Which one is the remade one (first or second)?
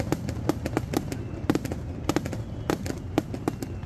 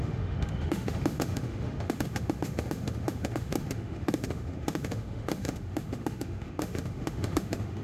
second